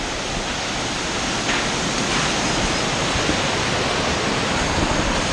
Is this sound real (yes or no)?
yes